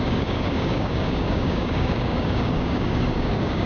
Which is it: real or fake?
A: fake